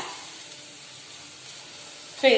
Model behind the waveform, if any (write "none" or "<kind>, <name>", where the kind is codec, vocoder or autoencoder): none